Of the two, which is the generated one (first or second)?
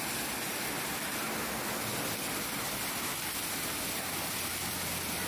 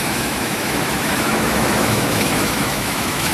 second